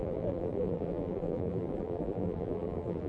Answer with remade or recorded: remade